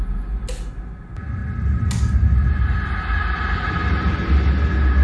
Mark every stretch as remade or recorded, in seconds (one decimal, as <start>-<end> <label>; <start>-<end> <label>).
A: 0.0-5.0 recorded